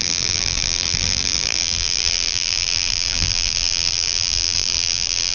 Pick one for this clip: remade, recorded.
remade